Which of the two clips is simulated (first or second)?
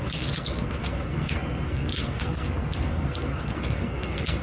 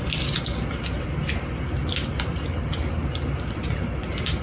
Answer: first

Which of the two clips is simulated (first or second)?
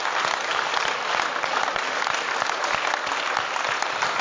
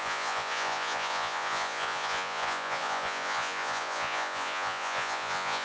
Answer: second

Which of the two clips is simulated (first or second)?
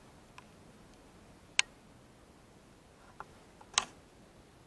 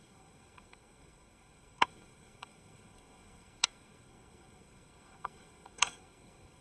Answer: second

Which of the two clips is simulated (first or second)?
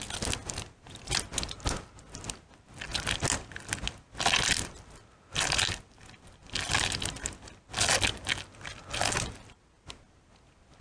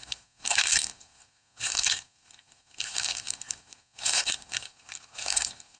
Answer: second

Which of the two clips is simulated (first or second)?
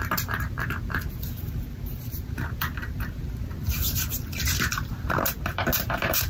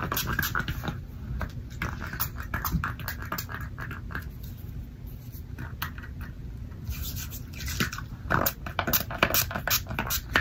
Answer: first